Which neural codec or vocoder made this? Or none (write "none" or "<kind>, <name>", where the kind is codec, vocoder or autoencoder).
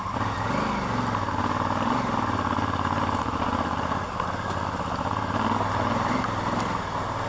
none